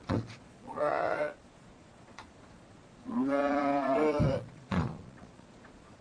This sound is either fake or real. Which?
fake